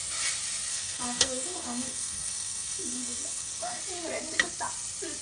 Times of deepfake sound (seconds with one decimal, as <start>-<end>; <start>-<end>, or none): 0.7-3.8